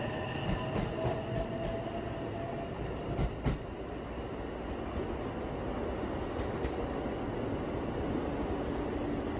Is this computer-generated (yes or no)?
no